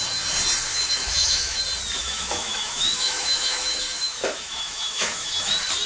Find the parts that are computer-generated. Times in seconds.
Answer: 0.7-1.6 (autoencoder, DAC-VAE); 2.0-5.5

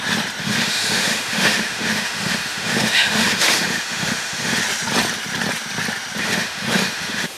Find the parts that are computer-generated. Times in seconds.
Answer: 0.4-4.6 (autoencoder, DAC-VAE); 6.2-7.4